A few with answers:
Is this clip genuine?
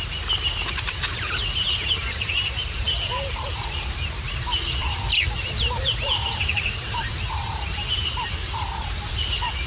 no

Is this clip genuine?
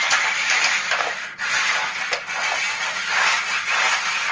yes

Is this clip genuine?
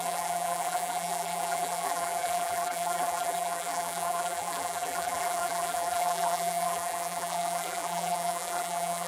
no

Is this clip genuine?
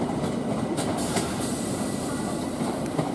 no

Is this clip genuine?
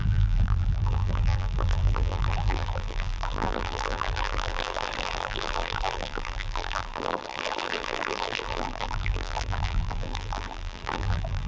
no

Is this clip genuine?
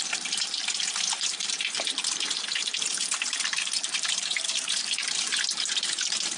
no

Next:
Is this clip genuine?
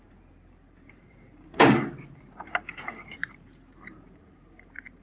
no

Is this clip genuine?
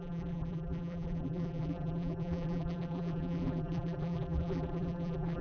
no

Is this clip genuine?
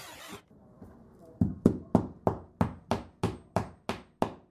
yes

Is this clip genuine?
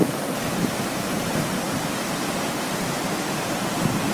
no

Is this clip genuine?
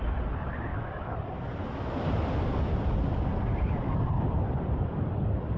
no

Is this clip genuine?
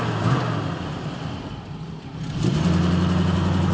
yes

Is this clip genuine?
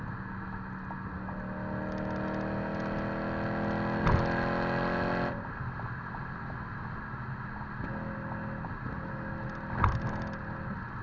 yes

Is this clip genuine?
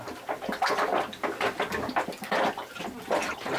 yes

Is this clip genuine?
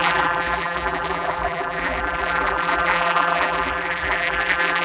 no